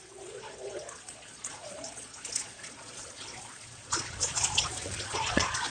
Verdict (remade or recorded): remade